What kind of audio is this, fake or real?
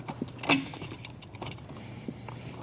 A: real